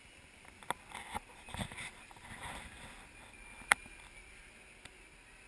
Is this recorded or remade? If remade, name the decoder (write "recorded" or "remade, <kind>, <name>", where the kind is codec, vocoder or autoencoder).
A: recorded